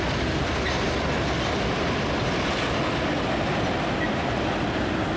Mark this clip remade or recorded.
recorded